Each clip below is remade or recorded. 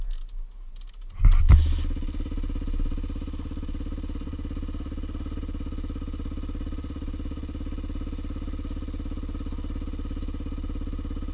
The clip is recorded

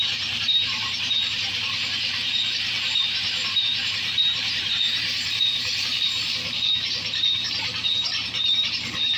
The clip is remade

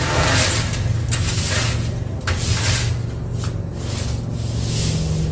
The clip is recorded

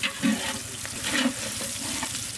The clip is recorded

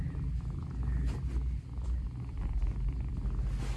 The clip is recorded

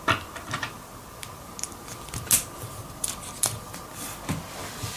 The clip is recorded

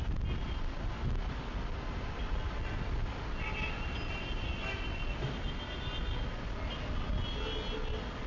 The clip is recorded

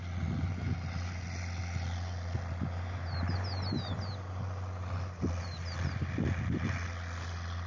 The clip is recorded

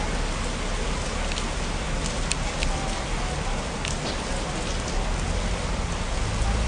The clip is recorded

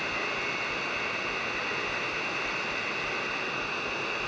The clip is recorded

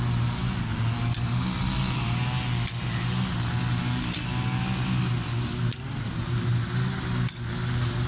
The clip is recorded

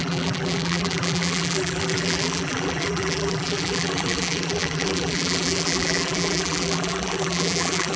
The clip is remade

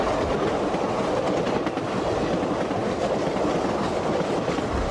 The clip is recorded